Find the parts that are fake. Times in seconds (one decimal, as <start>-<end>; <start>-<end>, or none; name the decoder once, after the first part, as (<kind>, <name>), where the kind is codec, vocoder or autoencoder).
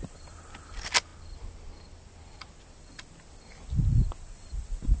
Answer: none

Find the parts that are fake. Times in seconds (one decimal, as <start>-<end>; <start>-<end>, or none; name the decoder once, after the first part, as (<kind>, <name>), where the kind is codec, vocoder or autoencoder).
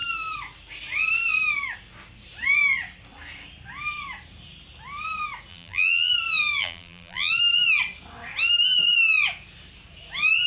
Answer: 5.5-6.1 (vocoder, BigVGAN v2); 6.6-7.3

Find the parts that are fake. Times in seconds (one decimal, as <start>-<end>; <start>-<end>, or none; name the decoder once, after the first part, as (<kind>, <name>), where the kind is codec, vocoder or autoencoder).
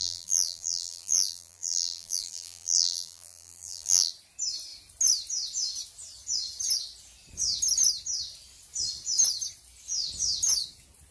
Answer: 0.0-4.1 (vocoder, BigVGAN v2)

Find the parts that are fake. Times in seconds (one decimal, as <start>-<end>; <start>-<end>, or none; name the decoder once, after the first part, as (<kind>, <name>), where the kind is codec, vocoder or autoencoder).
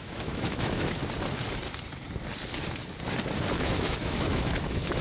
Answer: 0.0-1.0 (autoencoder, DAC-VAE); 3.5-5.0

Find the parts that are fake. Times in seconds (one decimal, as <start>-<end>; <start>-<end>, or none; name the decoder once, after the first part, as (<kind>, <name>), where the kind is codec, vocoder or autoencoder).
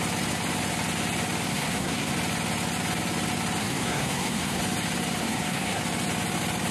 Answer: 1.5-2.1 (codec, SNAC); 3.6-4.6; 5.2-5.8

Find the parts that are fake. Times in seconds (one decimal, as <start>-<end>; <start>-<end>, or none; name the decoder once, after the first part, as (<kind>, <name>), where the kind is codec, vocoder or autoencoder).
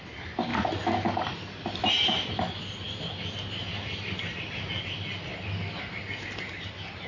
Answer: none